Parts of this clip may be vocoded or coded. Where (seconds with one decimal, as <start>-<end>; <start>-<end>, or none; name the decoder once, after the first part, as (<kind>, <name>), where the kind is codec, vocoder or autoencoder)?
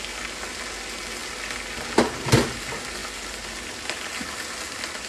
none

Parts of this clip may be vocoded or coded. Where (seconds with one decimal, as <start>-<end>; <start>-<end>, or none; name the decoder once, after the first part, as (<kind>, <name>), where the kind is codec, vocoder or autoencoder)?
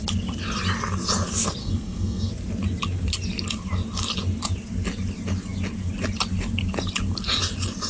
1.6-2.3 (codec, SNAC)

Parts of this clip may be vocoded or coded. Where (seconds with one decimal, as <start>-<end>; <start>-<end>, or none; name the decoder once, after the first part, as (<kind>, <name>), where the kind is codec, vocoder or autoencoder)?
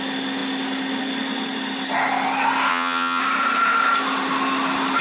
2.7-3.2 (vocoder, HiFi-GAN)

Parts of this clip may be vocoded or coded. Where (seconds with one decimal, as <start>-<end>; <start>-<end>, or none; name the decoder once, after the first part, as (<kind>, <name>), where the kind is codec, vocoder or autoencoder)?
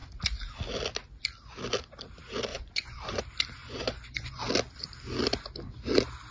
2.5-3.2 (vocoder, Vocos); 3.6-4.4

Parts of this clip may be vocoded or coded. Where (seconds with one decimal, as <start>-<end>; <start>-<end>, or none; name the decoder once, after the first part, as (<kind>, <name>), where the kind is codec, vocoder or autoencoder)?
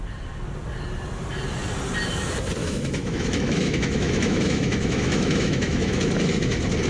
2.6-6.0 (autoencoder, DAC-VAE)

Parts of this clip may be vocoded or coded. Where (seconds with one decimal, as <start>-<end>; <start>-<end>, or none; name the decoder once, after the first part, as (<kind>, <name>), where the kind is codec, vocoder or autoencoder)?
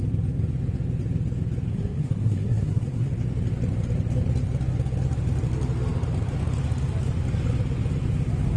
1.7-3.1 (codec, SNAC)